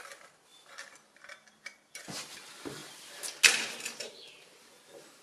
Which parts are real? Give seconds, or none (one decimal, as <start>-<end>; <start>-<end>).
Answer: 0.0-0.5; 2.0-5.2